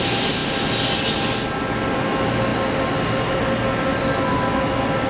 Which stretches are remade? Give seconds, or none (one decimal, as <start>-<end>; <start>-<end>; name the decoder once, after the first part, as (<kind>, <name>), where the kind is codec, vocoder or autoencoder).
none